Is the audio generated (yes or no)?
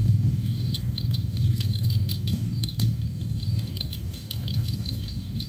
yes